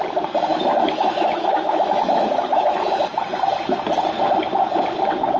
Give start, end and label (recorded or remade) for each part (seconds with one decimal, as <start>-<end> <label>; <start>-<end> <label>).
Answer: 0.0-0.5 recorded; 0.5-2.3 remade; 2.3-5.4 recorded